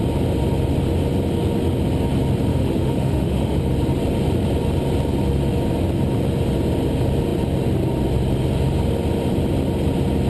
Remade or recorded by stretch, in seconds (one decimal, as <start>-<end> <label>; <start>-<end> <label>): 0.0-2.5 recorded; 2.5-3.6 remade; 3.6-10.3 recorded